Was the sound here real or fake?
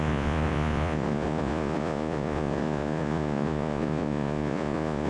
fake